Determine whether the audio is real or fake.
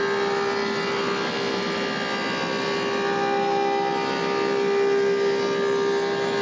real